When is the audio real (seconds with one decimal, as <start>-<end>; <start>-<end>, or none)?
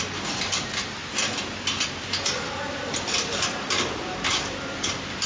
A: 0.0-5.3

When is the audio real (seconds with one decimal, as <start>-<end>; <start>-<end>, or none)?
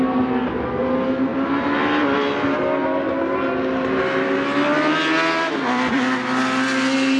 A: 0.0-7.2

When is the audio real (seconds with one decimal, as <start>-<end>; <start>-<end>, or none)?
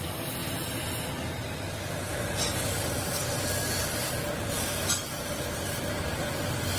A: 0.0-6.8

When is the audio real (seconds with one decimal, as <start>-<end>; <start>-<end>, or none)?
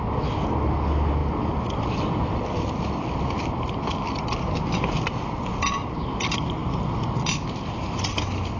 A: 0.0-8.6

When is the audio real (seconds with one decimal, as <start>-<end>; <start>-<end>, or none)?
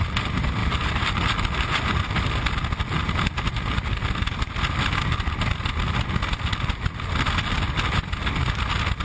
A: 0.0-0.6; 1.1-9.0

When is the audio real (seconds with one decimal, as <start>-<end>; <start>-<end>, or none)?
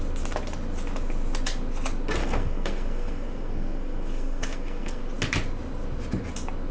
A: 0.0-2.2; 5.0-6.7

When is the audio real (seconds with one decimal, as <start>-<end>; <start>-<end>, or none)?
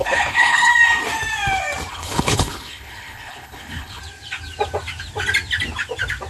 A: 0.7-1.9; 4.0-6.3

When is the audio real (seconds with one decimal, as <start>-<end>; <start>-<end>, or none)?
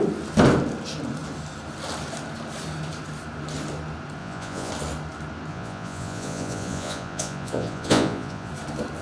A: 0.0-4.2; 4.7-5.5; 8.5-9.0